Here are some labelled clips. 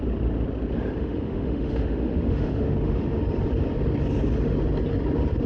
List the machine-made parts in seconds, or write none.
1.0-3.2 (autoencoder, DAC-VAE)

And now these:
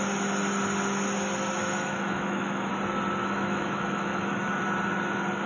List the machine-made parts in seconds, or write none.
1.6-2.7 (autoencoder, DAC-VAE); 3.2-4.6

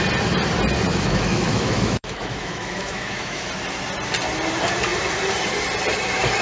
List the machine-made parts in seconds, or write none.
0.9-3.5 (autoencoder, DAC-VAE)

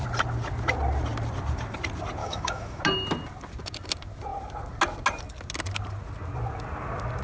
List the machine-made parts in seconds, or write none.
2.2-2.8 (autoencoder, DAC-VAE)

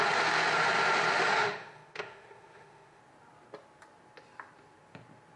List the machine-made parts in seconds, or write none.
1.1-3.0 (autoencoder, DAC-VAE)

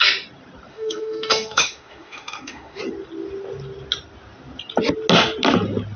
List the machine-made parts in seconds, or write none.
0.7-2.8 (autoencoder, DAC-VAE)